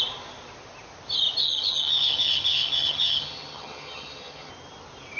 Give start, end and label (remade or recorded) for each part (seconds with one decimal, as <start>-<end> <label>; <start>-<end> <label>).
0.0-1.4 recorded; 1.4-4.5 remade; 4.5-5.2 recorded